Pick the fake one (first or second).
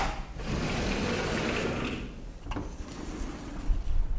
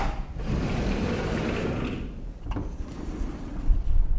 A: second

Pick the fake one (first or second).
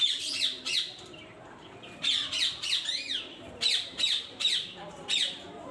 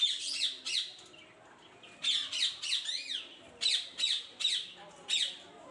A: first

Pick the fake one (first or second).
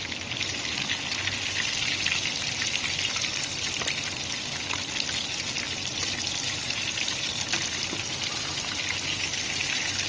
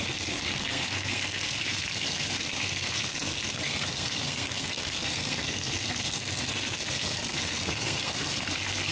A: second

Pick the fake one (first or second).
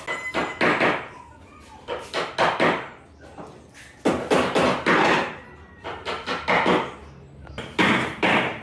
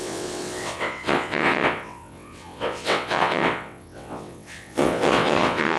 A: second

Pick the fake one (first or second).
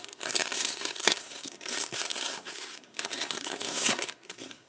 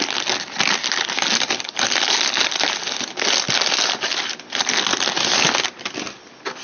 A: first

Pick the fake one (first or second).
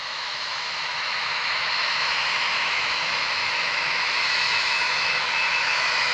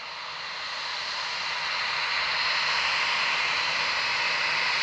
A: first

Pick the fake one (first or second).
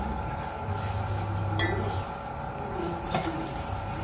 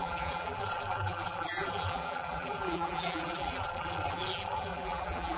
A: second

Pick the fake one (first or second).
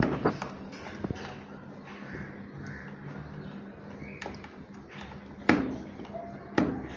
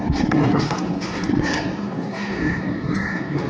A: second